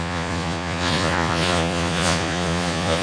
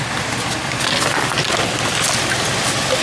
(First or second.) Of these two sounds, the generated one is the first